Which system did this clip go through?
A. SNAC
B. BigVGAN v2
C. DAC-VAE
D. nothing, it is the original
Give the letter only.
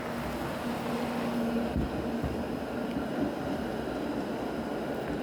D